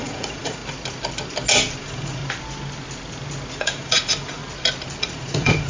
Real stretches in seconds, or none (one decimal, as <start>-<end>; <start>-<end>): 0.6-1.8; 2.2-3.5; 4.4-5.0